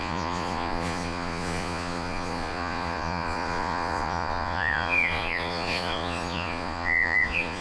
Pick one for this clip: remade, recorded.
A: remade